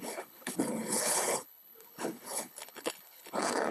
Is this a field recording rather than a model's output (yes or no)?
no